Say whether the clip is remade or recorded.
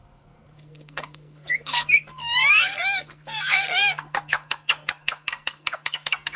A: remade